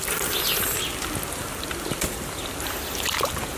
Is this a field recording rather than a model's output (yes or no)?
yes